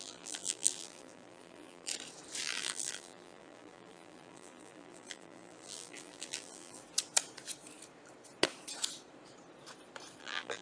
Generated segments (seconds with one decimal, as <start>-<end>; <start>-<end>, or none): 0.0-1.9; 2.4-6.8; 10.2-10.6